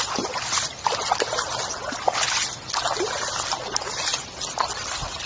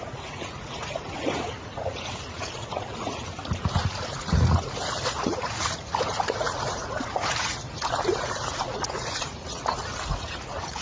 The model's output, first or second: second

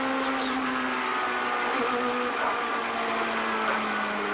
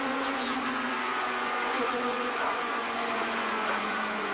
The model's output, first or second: second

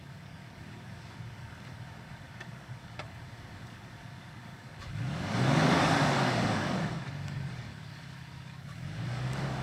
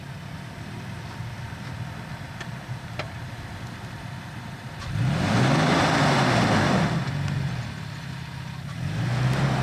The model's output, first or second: first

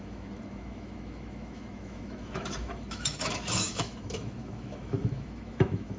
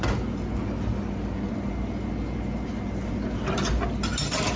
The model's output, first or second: first